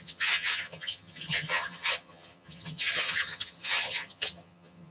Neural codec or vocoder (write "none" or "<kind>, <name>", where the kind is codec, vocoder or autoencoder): vocoder, HiFi-GAN